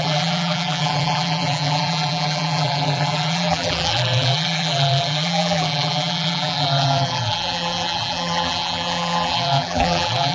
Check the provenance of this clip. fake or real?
fake